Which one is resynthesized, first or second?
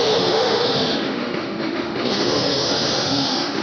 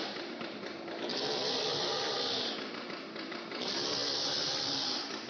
first